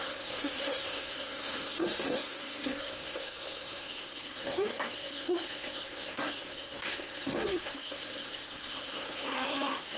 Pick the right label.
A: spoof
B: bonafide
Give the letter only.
A